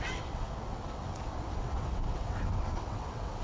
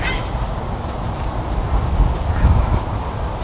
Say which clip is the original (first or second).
second